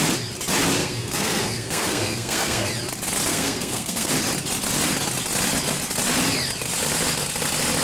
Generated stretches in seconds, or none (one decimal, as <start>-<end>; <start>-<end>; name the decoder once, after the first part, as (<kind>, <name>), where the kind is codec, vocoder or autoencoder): 0.8-2.7 (codec, SNAC); 3.3-4.1